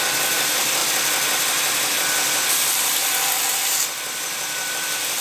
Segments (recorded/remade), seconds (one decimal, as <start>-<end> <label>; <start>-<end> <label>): 0.0-0.8 remade; 0.8-2.5 recorded; 2.5-3.0 remade; 3.0-4.7 recorded; 4.7-5.2 remade